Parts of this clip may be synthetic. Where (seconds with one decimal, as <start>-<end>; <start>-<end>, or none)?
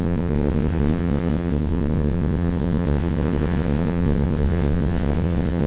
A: 0.0-5.7